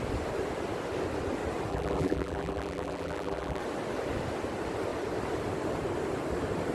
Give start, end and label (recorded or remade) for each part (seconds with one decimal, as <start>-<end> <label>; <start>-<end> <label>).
0.0-1.7 recorded; 1.7-3.6 remade; 3.6-6.7 recorded

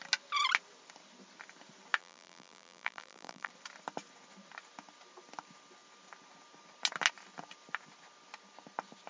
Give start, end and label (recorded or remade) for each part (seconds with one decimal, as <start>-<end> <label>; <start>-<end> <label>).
0.0-2.0 recorded; 2.0-3.5 remade; 3.5-9.1 recorded

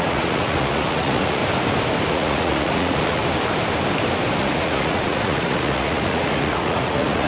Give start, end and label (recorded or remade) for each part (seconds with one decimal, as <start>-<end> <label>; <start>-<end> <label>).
0.0-1.4 remade; 1.4-2.1 recorded; 2.1-3.2 remade; 3.2-4.4 recorded; 4.4-7.3 remade

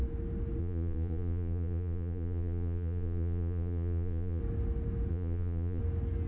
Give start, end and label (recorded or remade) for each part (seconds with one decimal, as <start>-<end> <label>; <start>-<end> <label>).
0.0-0.6 recorded; 0.6-4.4 remade; 4.4-5.1 recorded; 5.1-5.8 remade; 5.8-6.3 recorded

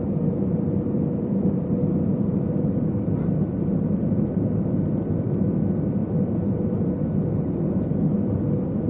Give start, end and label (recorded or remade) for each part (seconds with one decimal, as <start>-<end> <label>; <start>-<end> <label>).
0.0-8.9 recorded

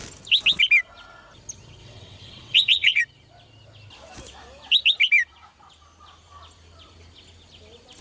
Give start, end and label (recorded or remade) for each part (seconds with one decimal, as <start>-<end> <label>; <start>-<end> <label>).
0.0-1.8 recorded; 1.8-3.0 remade; 3.0-8.0 recorded